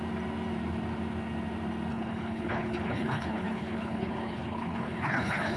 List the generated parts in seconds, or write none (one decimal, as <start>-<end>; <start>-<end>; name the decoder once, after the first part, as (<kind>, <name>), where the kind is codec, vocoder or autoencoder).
1.9-5.6 (codec, HILCodec)